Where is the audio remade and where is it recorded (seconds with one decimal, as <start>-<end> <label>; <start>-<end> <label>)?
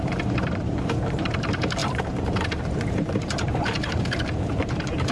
0.0-5.1 remade